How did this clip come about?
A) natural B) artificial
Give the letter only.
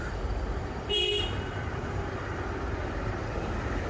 B